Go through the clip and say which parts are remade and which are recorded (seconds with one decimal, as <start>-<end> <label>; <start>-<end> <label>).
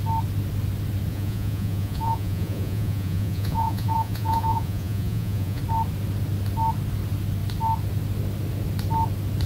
0.0-1.1 recorded; 1.1-5.6 remade; 5.6-9.5 recorded